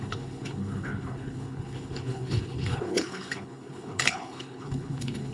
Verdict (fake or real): fake